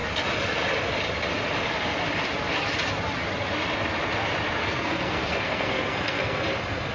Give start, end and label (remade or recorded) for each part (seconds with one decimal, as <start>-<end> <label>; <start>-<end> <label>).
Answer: 0.0-4.6 recorded; 4.6-6.4 remade; 6.4-6.9 recorded